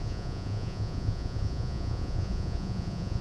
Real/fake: fake